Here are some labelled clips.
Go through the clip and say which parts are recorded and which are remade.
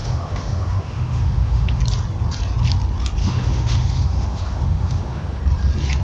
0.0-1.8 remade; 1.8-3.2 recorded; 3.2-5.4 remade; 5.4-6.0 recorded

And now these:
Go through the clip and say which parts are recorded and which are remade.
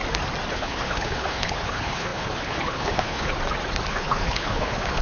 0.0-0.5 recorded; 0.5-3.3 remade; 3.3-3.9 recorded; 3.9-5.0 remade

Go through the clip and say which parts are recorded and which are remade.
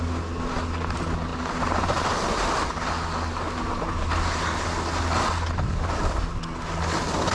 0.0-7.3 recorded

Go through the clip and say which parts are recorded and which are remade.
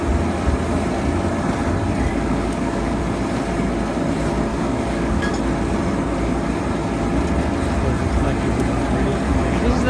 0.0-2.1 recorded; 2.1-3.0 remade; 3.0-4.5 recorded; 4.5-5.3 remade; 5.3-9.9 recorded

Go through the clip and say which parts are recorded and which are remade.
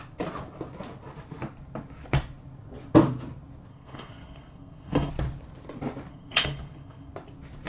0.0-3.7 recorded; 3.7-5.1 remade; 5.1-6.1 recorded; 6.1-7.1 remade; 7.1-7.7 recorded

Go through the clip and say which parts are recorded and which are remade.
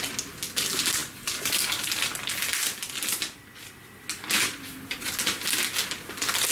0.0-6.5 recorded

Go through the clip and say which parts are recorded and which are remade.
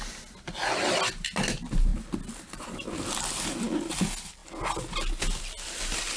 0.0-6.2 recorded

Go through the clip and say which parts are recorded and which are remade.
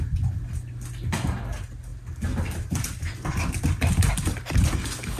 0.0-5.2 recorded